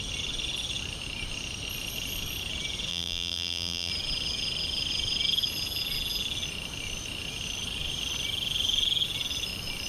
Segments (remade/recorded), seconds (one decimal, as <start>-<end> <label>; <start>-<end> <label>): 0.0-2.9 recorded; 2.9-3.9 remade; 3.9-9.9 recorded